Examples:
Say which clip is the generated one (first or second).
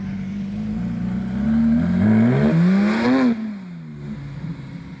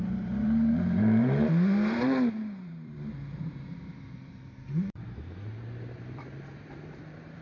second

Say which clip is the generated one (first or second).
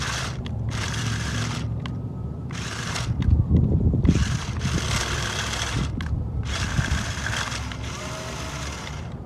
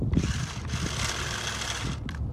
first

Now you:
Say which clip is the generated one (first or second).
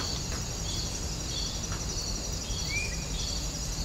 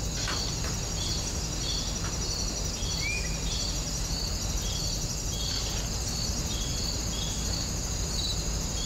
first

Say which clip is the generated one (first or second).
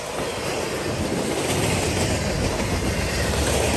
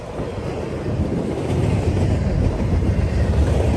second